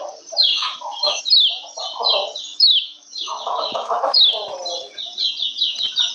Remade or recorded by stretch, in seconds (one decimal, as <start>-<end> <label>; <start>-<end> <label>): 0.0-0.5 recorded; 0.5-1.2 remade; 1.2-2.5 recorded; 2.5-4.3 remade; 4.3-6.1 recorded